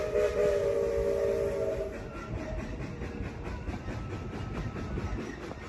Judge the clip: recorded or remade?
recorded